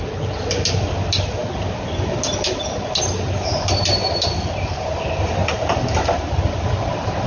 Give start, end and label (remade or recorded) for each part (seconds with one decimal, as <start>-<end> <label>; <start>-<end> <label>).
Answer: 0.0-7.3 recorded